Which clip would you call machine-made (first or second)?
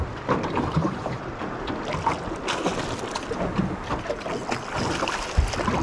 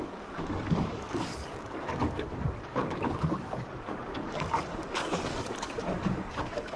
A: second